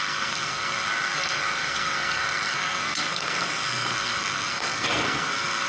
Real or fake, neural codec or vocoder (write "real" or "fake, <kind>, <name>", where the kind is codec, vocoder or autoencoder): fake, codec, SNAC